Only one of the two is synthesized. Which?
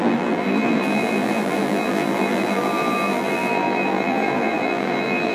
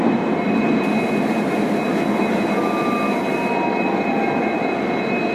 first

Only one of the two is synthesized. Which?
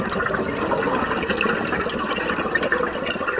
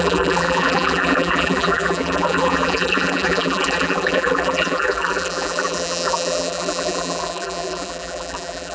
second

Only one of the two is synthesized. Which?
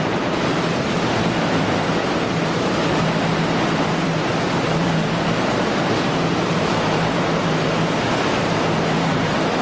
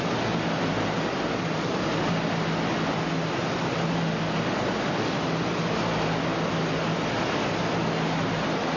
first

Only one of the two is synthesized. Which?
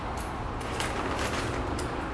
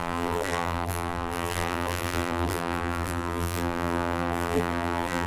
second